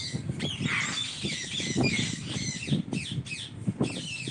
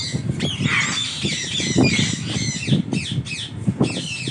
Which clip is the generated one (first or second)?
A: first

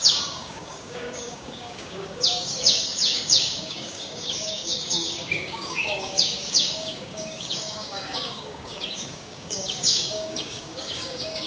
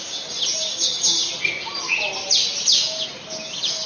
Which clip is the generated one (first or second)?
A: first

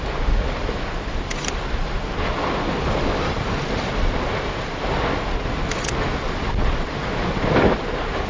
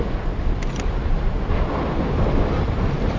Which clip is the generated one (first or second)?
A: second